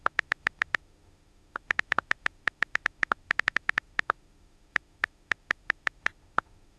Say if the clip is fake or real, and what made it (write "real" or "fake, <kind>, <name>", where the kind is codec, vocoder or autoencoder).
fake, autoencoder, DAC-VAE